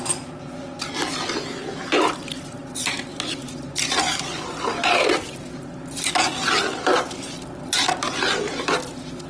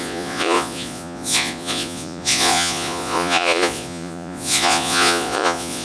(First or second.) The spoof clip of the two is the second